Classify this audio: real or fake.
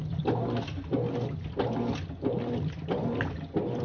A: real